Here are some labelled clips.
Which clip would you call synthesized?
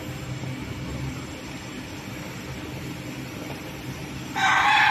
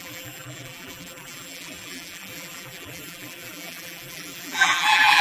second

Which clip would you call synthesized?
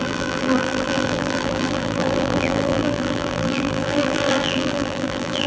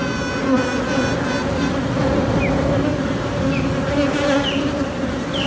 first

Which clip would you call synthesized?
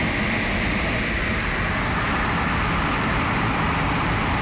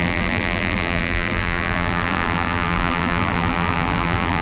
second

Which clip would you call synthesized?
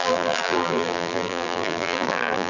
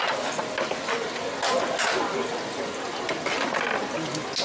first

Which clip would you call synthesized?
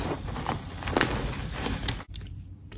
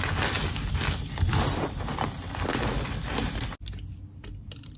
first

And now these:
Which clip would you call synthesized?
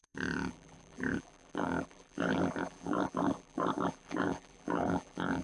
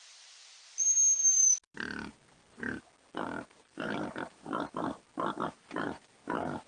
first